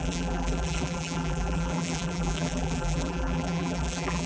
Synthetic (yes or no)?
yes